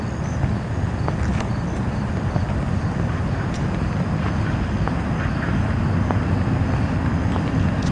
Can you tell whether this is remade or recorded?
recorded